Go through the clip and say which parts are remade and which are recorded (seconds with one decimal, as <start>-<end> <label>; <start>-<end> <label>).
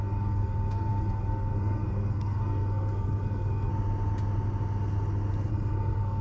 0.0-3.7 remade; 3.7-5.5 recorded; 5.5-6.2 remade